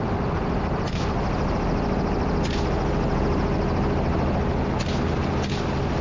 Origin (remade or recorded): recorded